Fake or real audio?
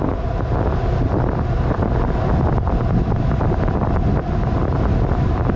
real